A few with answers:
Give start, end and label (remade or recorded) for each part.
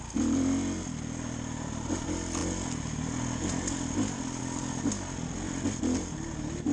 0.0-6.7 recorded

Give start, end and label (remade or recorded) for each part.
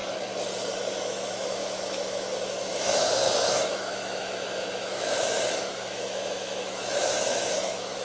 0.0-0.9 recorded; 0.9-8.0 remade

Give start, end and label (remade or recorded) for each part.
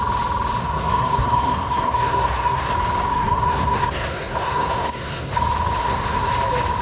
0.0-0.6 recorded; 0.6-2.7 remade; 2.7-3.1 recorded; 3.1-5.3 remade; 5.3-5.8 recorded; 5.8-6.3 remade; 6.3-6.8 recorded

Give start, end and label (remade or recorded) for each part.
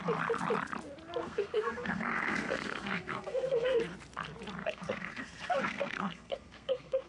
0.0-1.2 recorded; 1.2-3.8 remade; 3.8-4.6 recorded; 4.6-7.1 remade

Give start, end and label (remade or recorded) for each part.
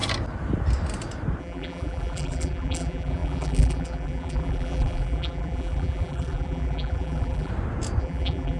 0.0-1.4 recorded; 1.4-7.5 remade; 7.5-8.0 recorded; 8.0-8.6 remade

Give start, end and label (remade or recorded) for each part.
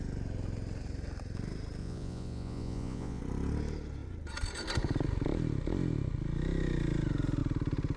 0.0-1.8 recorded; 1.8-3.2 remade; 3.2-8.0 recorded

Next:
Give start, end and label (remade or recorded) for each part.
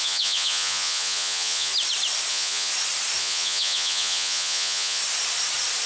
0.0-1.7 remade; 1.7-2.3 recorded; 2.3-2.7 remade; 2.7-3.2 recorded; 3.2-5.0 remade; 5.0-5.9 recorded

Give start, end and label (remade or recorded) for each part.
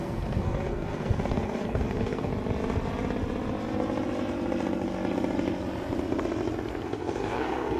0.0-2.3 remade; 2.3-6.7 recorded; 6.7-7.8 remade